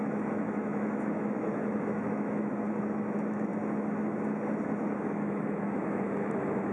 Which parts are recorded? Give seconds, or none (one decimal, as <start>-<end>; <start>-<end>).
3.5-5.1